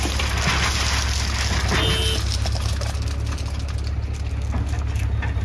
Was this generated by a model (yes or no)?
no